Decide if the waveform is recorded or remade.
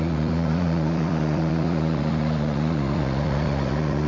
remade